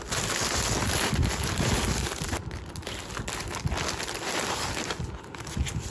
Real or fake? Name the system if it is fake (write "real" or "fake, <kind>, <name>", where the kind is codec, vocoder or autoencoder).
real